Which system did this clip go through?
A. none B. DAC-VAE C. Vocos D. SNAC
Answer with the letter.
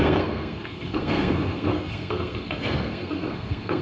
D